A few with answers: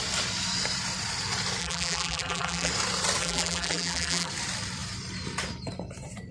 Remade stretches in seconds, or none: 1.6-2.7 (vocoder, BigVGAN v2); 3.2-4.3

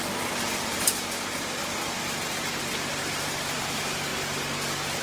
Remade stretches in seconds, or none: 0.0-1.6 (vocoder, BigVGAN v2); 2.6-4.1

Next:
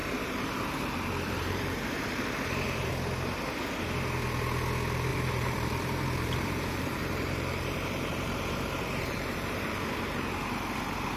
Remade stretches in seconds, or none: 0.0-2.9 (vocoder, BigVGAN v2); 5.1-9.8

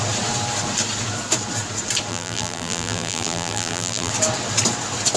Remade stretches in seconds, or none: 2.1-4.1 (vocoder, BigVGAN v2)

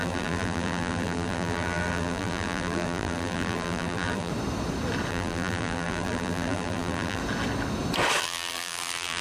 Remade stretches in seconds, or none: 0.0-4.3 (vocoder, BigVGAN v2); 5.1-7.2; 8.2-9.2

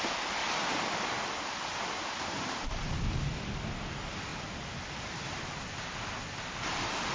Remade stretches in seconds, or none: 0.0-4.3 (vocoder, BigVGAN v2); 5.5-7.1